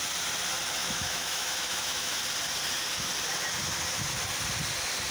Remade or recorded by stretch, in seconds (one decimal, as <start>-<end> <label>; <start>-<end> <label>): 0.0-0.8 recorded; 0.8-2.2 remade; 2.2-5.1 recorded